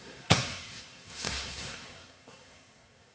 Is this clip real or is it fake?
fake